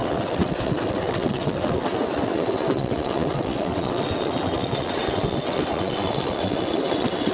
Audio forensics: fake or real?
fake